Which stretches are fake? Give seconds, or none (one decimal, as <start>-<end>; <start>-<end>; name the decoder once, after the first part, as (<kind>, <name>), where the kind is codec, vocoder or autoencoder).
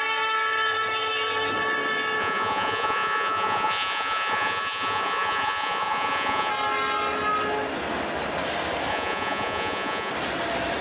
2.2-6.5 (vocoder, Vocos); 8.9-10.1